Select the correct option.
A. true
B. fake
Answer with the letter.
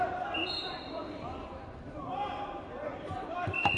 B